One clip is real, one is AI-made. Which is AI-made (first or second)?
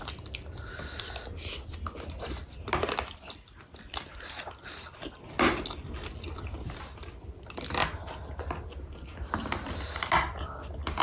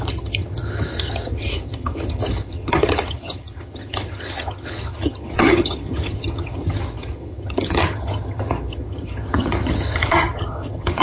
second